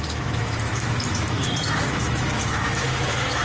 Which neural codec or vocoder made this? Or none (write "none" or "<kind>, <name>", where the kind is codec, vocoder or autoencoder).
autoencoder, DAC-VAE